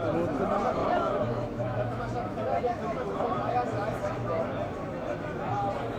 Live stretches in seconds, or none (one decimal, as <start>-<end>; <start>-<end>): 0.0-0.8; 4.4-6.0